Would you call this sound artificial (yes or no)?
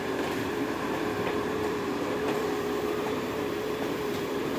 yes